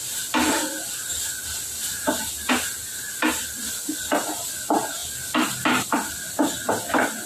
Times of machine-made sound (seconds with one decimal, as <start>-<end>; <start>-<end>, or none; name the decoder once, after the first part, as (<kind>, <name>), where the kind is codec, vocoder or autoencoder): none